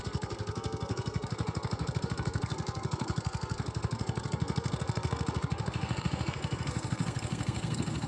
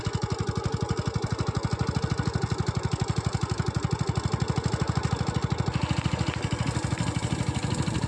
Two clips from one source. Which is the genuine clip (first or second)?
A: second